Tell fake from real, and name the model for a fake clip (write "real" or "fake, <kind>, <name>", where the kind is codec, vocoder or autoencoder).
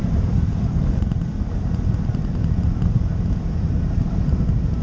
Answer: real